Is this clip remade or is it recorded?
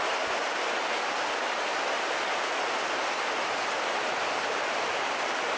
recorded